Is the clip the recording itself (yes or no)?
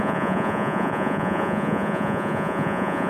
no